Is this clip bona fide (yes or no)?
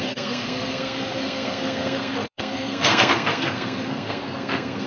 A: no